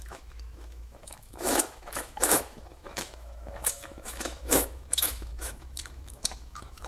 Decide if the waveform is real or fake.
fake